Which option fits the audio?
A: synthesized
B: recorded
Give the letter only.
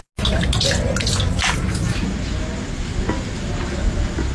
B